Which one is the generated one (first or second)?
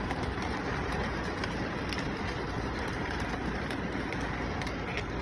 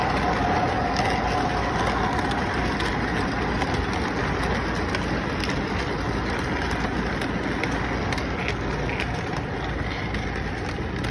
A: first